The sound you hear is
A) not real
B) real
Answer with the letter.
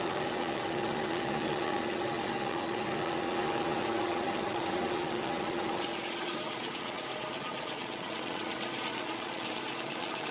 A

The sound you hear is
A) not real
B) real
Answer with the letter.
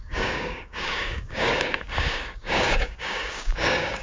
A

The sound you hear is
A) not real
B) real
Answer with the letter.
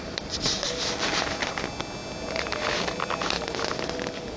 B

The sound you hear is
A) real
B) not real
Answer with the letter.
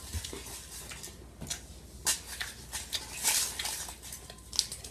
A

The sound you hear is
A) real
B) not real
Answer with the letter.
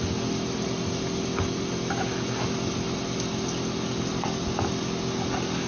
A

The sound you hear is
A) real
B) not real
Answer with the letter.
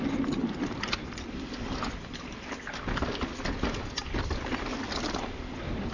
A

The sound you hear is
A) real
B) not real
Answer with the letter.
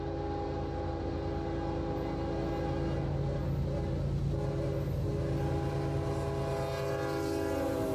A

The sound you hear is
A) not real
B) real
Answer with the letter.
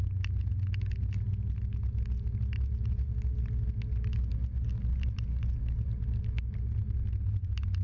B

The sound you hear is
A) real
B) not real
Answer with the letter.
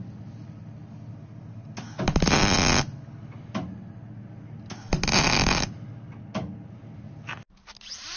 A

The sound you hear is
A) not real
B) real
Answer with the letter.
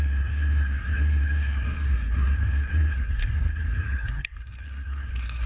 A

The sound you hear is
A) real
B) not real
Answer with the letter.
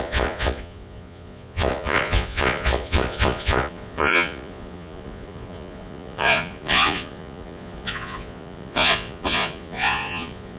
B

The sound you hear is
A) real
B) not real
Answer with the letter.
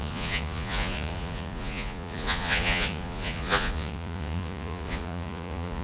B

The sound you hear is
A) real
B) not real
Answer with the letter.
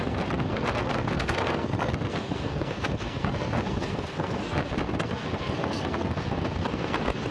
B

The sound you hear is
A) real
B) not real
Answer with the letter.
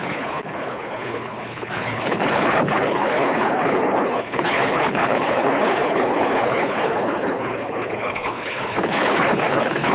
B